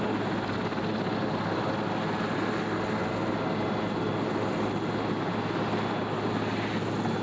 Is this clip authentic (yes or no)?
yes